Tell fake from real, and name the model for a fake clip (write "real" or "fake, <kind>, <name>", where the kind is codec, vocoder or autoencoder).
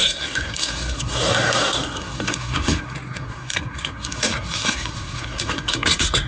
fake, codec, SNAC